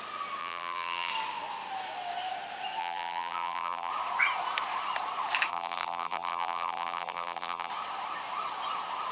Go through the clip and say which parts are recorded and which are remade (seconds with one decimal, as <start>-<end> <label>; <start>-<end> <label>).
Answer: 0.0-0.4 recorded; 0.4-1.1 remade; 1.1-2.8 recorded; 2.8-3.9 remade; 3.9-5.5 recorded; 5.5-7.7 remade; 7.7-9.1 recorded